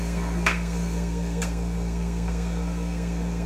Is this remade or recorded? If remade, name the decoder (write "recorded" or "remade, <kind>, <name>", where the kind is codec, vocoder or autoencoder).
remade, codec, SNAC